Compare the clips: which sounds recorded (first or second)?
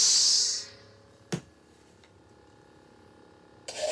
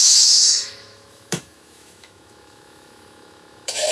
first